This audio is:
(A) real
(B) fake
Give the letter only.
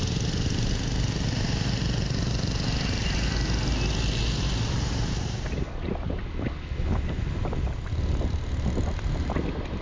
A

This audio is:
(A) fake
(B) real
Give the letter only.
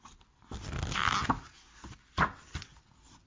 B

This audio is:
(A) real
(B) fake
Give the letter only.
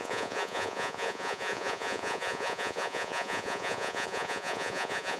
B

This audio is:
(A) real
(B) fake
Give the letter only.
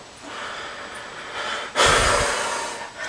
A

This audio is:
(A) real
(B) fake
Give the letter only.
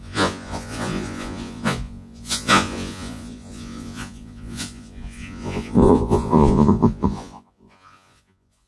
B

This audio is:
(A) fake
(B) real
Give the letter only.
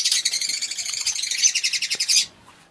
A